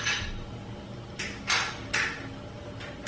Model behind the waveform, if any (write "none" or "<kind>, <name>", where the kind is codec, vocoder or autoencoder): none